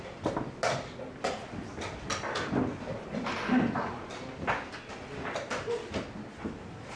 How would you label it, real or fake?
real